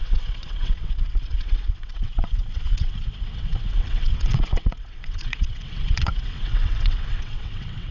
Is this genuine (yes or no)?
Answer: no